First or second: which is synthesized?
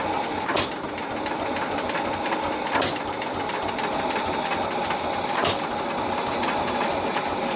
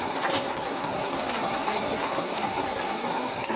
second